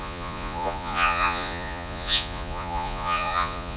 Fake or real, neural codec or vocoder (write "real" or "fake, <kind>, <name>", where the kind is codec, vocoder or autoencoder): fake, vocoder, Vocos